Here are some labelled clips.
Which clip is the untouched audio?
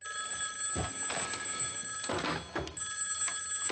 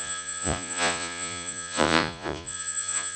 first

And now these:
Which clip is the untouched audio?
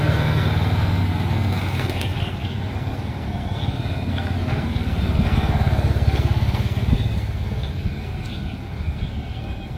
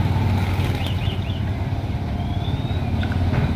second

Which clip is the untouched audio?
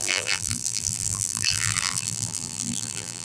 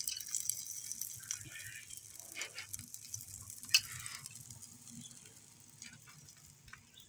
second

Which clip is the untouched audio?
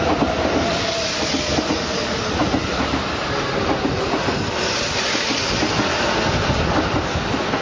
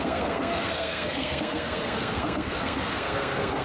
first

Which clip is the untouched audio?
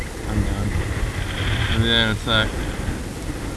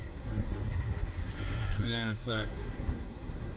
first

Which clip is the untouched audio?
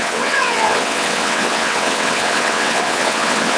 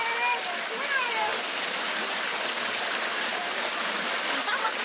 second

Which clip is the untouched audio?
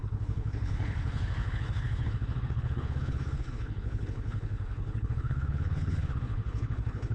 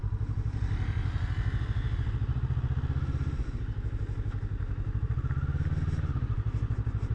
second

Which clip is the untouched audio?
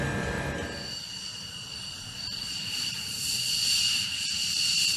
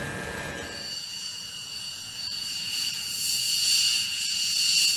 first